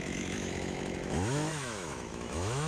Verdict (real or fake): fake